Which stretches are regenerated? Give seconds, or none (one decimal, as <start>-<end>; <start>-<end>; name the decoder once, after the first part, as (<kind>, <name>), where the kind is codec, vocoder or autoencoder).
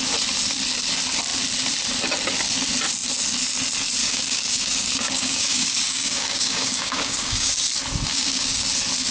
4.0-7.5 (codec, DAC); 8.1-8.7